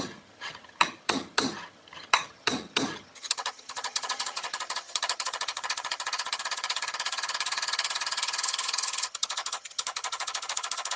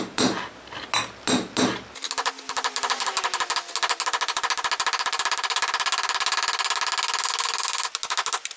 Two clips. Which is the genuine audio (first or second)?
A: second